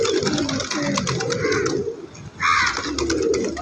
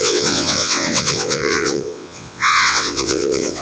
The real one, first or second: first